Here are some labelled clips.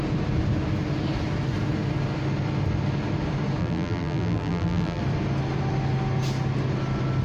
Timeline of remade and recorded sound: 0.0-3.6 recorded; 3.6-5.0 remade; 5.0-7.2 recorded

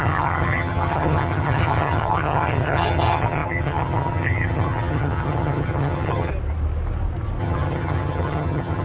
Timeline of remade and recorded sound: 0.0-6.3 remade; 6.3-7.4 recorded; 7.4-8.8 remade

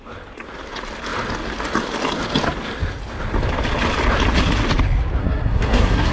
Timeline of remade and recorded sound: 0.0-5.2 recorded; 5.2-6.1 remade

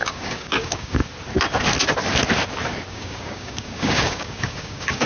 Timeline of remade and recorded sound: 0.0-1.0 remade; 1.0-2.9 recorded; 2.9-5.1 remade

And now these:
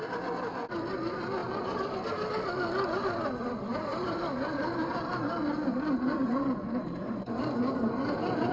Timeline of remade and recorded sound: 0.0-1.4 recorded; 1.4-1.9 remade; 1.9-3.7 recorded; 3.7-8.5 remade

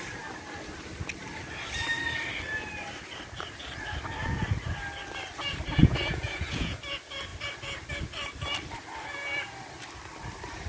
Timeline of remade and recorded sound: 0.0-5.8 recorded; 5.8-6.8 remade; 6.8-10.7 recorded